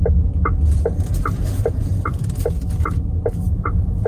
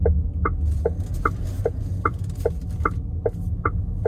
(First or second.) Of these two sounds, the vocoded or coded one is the first